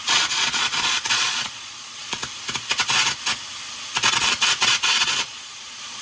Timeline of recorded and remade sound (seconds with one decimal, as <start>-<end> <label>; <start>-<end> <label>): 0.0-2.2 remade; 2.2-4.1 recorded; 4.1-6.0 remade